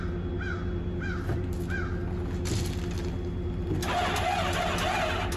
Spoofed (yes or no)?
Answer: no